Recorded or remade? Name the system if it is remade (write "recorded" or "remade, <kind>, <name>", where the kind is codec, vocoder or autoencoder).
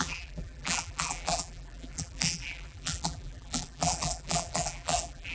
remade, vocoder, BigVGAN v2